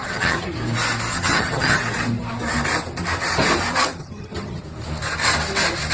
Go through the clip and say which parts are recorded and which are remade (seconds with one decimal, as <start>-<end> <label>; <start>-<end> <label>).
0.0-0.5 remade; 0.5-1.1 recorded; 1.1-1.8 remade; 1.8-4.0 recorded; 4.0-4.6 remade; 4.6-5.9 recorded